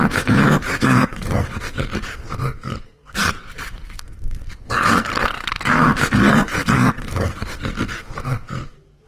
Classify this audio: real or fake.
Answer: fake